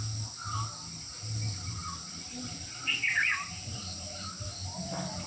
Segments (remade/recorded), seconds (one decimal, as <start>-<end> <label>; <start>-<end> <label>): 0.0-1.8 recorded; 1.8-5.3 remade